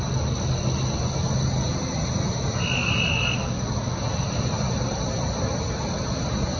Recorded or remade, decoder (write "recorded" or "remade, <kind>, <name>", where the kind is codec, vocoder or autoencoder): recorded